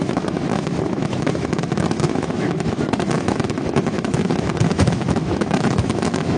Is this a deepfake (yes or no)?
yes